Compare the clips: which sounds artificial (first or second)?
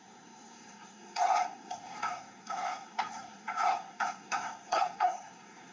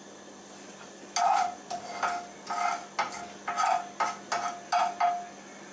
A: first